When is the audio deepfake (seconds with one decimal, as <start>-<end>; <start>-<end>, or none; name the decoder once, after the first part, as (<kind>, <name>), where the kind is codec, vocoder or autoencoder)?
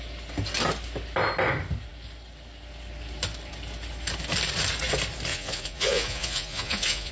5.3-7.1 (vocoder, Vocos)